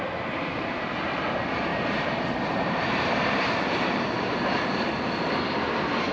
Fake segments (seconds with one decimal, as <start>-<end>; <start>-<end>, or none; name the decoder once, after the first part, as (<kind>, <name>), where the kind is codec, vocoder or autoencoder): 0.5-1.1 (vocoder, BigVGAN v2); 1.7-4.9